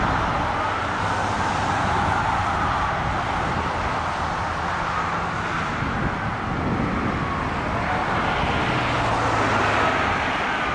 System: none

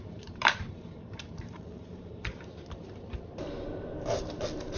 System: vocoder, BigVGAN v2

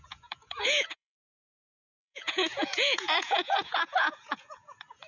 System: vocoder, Vocos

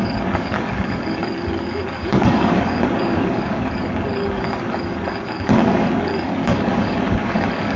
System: codec, DAC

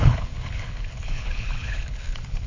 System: codec, HILCodec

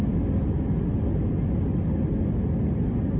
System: none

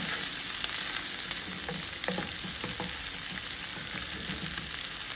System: none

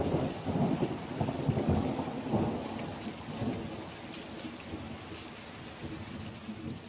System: none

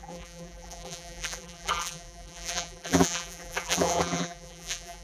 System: vocoder, BigVGAN v2